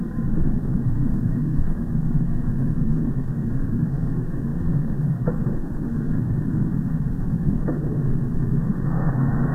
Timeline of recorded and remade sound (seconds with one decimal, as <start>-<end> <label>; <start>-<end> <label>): 0.0-9.5 remade

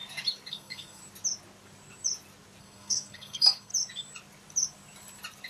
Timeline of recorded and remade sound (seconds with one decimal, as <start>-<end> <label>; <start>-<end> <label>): 0.0-0.5 recorded; 0.5-1.0 remade; 1.0-2.6 recorded; 2.6-3.7 remade; 3.7-5.5 recorded

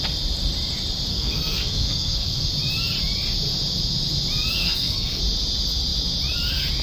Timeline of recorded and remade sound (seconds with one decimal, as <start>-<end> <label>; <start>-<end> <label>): 0.0-1.1 recorded; 1.1-2.5 remade; 2.5-4.6 recorded; 4.6-5.2 remade; 5.2-6.8 recorded